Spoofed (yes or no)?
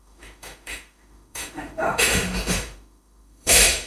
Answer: yes